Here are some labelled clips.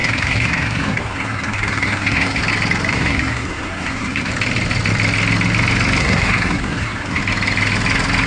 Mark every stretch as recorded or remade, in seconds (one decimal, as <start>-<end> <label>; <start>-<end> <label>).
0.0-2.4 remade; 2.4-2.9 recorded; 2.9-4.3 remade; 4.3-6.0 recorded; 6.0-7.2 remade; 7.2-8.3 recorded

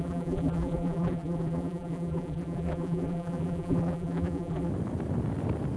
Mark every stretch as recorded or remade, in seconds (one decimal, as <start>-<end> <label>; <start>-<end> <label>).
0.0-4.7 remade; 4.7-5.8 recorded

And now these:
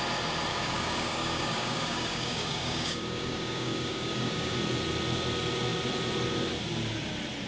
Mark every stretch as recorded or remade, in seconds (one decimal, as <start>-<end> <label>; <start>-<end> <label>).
0.0-0.5 recorded; 0.5-4.6 remade; 4.6-7.5 recorded